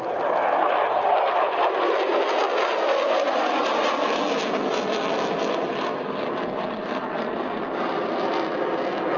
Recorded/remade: recorded